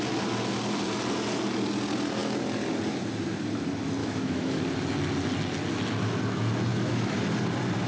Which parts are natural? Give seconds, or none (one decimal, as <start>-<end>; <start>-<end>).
0.0-4.0; 4.6-6.7; 7.2-7.9